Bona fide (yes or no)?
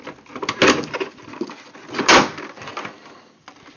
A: yes